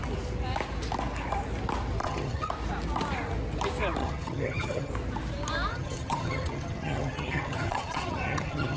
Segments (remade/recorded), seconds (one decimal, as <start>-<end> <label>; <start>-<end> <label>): 0.0-2.0 recorded; 2.0-2.5 remade; 2.5-4.0 recorded; 4.0-4.9 remade; 4.9-5.7 recorded; 5.7-8.8 remade